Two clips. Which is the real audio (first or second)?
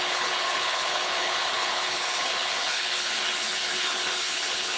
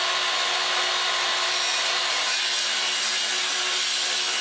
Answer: second